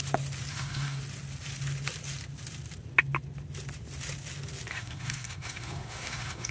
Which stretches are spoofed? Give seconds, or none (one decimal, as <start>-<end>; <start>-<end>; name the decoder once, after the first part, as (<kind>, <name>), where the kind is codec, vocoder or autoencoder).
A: 0.5-1.0 (codec, SNAC); 4.7-6.5